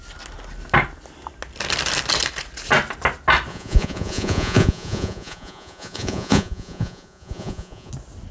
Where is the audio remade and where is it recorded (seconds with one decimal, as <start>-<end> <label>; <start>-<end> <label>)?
0.0-3.5 recorded; 3.5-7.9 remade; 7.9-8.3 recorded